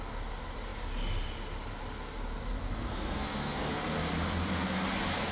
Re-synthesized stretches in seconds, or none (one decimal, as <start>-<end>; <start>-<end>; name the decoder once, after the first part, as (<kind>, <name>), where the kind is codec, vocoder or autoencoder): 2.9-3.7 (codec, SNAC)